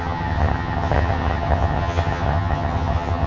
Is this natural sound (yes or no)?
no